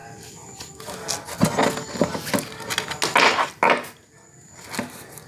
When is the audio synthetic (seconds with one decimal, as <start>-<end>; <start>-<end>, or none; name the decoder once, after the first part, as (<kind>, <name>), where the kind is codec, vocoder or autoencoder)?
none